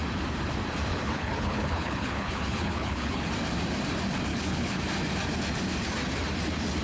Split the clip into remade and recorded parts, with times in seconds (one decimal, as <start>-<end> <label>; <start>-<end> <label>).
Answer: 0.0-0.9 recorded; 0.9-3.3 remade; 3.3-4.3 recorded; 4.3-4.8 remade; 4.8-6.8 recorded